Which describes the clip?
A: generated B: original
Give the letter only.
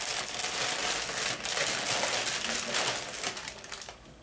B